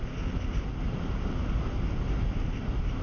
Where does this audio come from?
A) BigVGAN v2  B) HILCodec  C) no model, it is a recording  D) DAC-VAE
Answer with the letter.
C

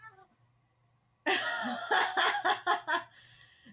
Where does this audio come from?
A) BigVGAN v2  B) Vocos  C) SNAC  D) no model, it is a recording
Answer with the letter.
D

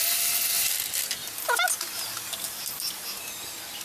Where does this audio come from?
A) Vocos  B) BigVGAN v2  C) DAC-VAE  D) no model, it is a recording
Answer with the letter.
D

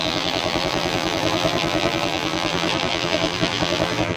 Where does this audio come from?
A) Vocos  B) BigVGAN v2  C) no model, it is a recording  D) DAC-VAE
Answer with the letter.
B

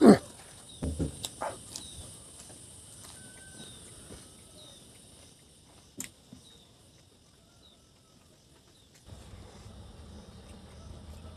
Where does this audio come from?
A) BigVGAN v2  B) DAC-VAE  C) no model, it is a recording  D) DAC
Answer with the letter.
C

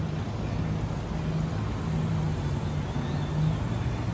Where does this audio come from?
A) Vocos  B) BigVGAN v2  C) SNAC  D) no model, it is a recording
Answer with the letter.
D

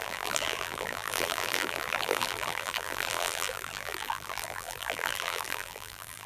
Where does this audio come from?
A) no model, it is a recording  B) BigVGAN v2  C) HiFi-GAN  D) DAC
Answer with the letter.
B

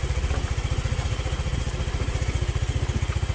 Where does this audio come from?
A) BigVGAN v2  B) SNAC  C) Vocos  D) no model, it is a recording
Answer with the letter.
D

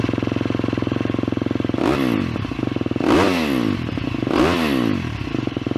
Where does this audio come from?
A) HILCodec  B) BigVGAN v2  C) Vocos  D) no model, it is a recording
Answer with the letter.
D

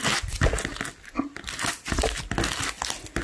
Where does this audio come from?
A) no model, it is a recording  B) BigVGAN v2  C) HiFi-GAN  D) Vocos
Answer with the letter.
A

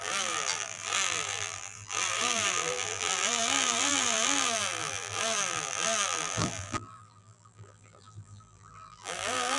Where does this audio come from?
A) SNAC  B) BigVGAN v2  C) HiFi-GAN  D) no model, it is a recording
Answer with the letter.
B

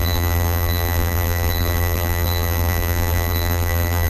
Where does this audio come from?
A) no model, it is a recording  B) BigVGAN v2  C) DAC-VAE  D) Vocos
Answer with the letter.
B